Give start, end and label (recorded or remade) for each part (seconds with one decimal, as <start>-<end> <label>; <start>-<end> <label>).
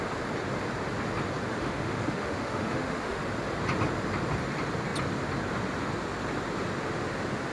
0.0-1.5 recorded; 1.5-3.2 remade; 3.2-7.5 recorded